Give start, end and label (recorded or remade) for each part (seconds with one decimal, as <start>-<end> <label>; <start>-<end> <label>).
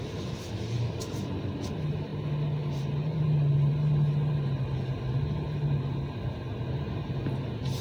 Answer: 0.0-7.8 recorded